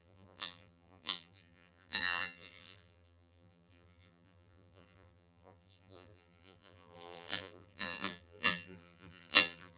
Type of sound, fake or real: fake